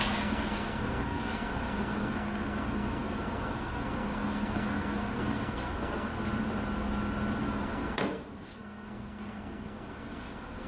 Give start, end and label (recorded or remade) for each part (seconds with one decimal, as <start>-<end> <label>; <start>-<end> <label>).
0.0-6.1 remade; 6.1-7.4 recorded; 7.4-10.7 remade